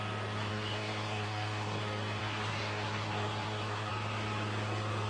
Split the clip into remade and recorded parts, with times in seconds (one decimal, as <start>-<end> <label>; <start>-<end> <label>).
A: 0.0-0.5 recorded; 0.5-1.8 remade; 1.8-2.2 recorded; 2.2-3.9 remade; 3.9-5.1 recorded